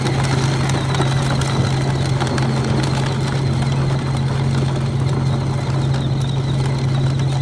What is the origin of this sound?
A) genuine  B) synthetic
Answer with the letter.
A